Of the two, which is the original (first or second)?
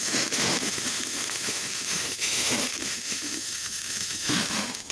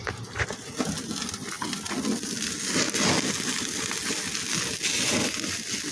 second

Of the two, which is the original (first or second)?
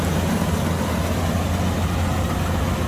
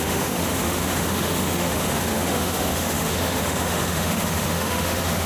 first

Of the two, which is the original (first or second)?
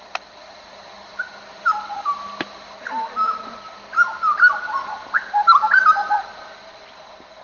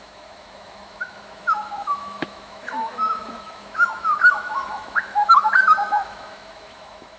first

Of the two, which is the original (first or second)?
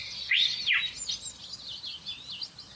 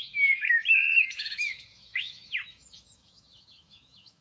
first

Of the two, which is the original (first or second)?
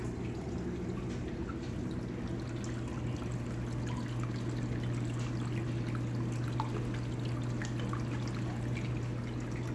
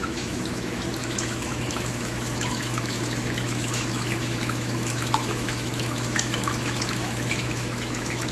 first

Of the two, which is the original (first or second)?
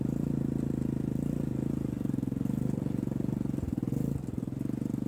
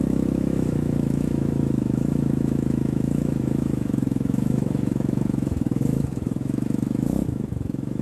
first